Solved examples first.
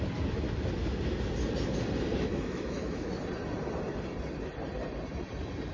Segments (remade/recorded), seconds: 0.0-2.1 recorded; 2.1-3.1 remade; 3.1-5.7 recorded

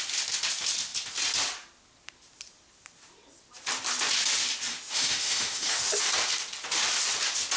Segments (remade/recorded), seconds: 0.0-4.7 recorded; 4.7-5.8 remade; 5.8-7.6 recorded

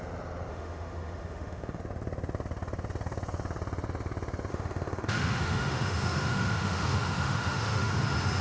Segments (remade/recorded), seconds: 0.0-0.5 recorded; 0.5-1.8 remade; 1.8-4.5 recorded; 4.5-7.9 remade; 7.9-8.4 recorded

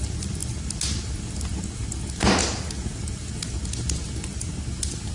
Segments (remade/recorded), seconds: 0.0-5.1 recorded

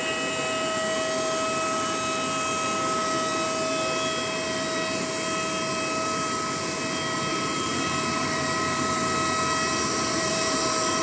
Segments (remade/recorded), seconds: 0.0-7.3 recorded; 7.3-8.6 remade; 8.6-10.1 recorded; 10.1-11.0 remade

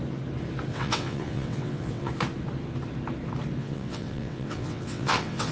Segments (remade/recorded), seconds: 0.0-0.7 recorded; 0.7-2.1 remade; 2.1-3.6 recorded; 3.6-5.5 remade

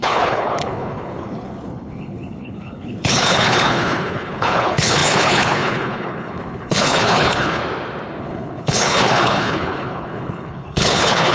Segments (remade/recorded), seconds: 0.0-7.6 remade; 7.6-8.2 recorded; 8.2-11.3 remade